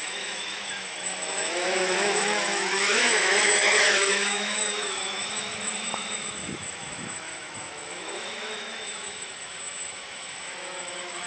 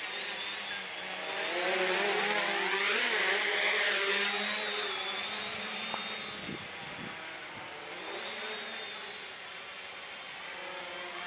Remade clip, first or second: first